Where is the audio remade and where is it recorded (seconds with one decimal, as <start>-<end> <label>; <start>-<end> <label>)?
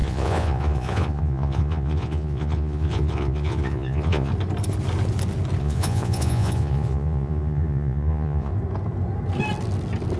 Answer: 0.0-4.3 remade; 4.3-5.6 recorded; 5.6-8.5 remade; 8.5-10.2 recorded